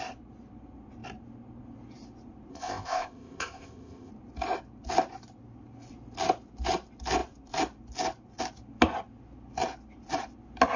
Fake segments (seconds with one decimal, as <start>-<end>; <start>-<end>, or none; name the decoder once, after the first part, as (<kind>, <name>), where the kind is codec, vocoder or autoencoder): 2.5-4.1 (codec, ZipCodec)